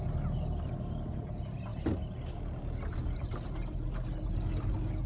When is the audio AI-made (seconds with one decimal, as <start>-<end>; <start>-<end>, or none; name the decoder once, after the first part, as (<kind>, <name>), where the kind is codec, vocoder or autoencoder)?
none